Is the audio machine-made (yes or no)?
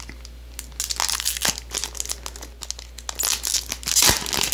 no